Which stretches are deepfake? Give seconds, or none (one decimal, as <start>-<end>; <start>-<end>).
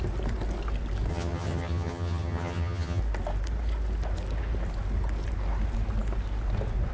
1.1-3.0